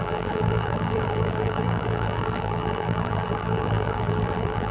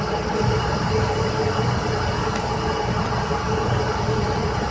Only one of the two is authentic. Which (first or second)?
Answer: second